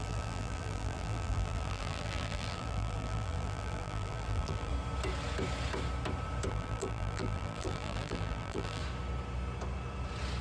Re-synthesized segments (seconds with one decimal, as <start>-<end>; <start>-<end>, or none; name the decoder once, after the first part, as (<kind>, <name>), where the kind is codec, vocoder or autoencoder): 0.0-4.7 (vocoder, BigVGAN v2); 6.5-8.8